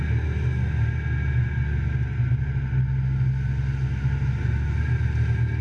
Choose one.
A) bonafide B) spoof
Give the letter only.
A